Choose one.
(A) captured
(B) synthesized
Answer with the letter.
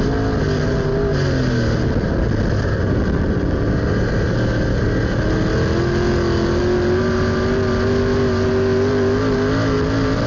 A